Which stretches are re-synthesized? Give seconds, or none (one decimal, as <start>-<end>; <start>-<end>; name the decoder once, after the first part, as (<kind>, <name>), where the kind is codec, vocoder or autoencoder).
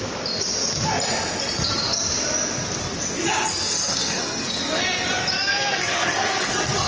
3.5-4.8 (codec, SNAC); 5.5-6.5